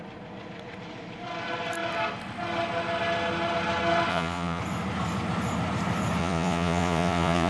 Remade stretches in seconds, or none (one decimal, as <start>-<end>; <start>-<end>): 4.1-4.6; 6.2-7.5